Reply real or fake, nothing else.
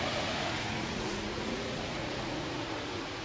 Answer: fake